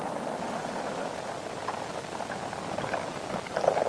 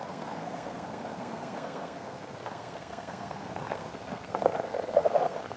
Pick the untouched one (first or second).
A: first